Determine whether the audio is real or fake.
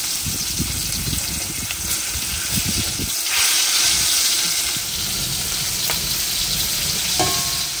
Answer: real